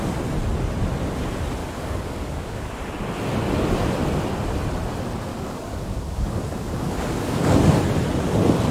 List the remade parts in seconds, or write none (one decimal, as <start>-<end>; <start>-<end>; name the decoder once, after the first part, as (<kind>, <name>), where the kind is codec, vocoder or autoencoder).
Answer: 1.6-2.7 (codec, DAC); 5.3-7.8